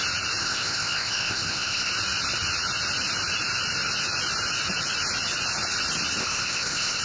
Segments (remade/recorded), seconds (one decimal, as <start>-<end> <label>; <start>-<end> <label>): 0.0-0.4 recorded; 0.4-1.9 remade; 1.9-6.2 recorded; 6.2-7.0 remade